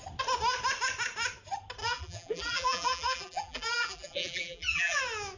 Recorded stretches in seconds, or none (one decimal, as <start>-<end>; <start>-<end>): 0.0-1.8; 5.0-5.4